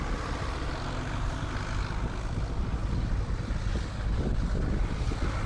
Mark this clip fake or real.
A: real